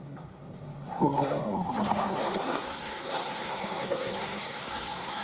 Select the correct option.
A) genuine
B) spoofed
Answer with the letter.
B